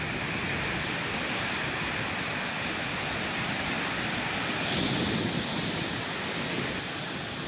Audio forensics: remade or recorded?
recorded